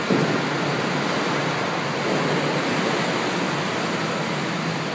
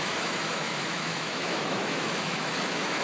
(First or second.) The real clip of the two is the first